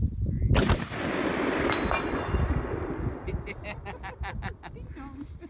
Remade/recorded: recorded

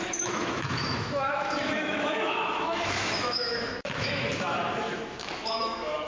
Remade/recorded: remade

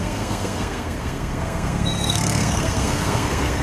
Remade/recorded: remade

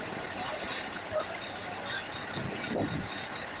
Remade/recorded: recorded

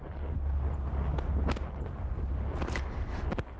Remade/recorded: recorded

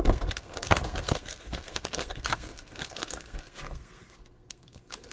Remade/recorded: remade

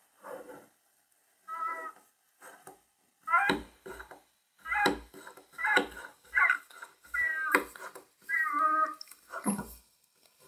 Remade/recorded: recorded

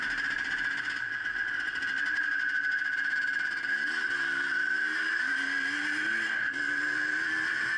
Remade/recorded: recorded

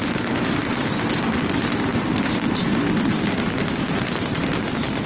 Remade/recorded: remade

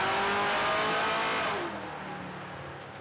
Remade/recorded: recorded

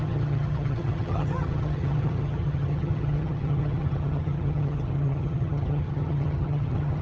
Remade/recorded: remade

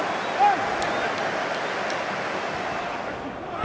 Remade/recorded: recorded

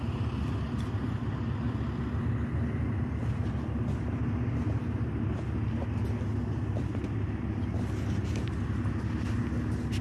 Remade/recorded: recorded